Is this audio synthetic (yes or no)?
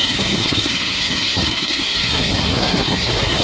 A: yes